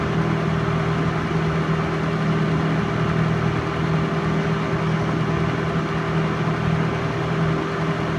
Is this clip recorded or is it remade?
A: recorded